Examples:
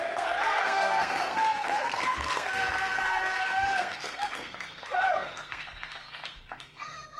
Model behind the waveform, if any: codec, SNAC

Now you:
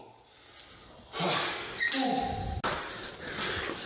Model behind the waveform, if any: none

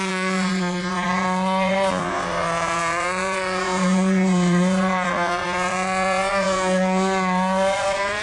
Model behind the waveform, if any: vocoder, Vocos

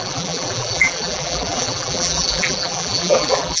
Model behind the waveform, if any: vocoder, BigVGAN v2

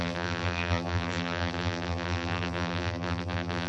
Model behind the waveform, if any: vocoder, BigVGAN v2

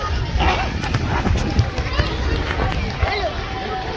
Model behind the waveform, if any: none